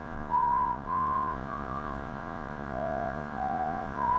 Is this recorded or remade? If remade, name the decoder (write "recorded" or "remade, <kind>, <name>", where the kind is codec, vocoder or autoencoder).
remade, vocoder, Vocos